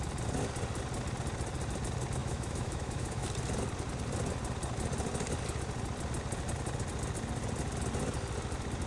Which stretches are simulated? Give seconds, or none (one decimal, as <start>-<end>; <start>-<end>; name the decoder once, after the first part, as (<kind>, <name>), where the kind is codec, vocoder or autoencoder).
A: 2.2-3.3 (autoencoder, DAC-VAE)